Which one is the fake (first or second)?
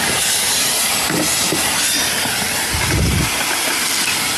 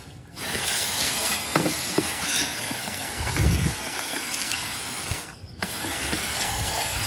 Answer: second